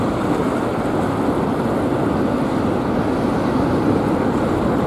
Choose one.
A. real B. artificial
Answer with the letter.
A